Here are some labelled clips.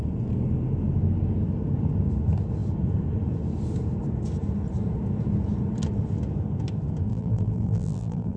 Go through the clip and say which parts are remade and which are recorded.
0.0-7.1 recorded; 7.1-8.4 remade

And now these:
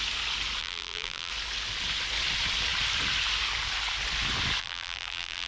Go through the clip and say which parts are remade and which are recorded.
0.0-0.6 recorded; 0.6-1.3 remade; 1.3-4.6 recorded; 4.6-5.5 remade

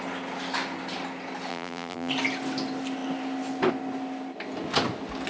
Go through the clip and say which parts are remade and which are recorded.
0.0-1.5 recorded; 1.5-2.1 remade; 2.1-5.3 recorded

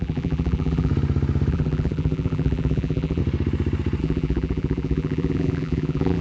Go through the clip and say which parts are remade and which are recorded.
0.0-0.9 remade; 0.9-1.5 recorded; 1.5-3.2 remade; 3.2-4.0 recorded; 4.0-6.2 remade

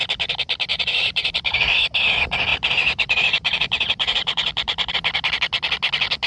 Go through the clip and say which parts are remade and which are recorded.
0.0-0.7 recorded; 0.7-1.8 remade; 1.8-2.5 recorded; 2.5-4.9 remade; 4.9-6.3 recorded